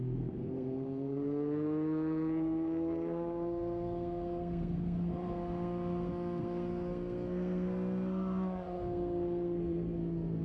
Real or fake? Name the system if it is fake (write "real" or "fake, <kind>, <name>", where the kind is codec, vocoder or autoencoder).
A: fake, codec, SNAC